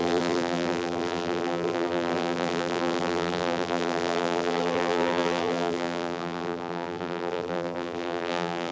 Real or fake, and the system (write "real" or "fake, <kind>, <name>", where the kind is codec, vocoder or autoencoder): fake, vocoder, BigVGAN v2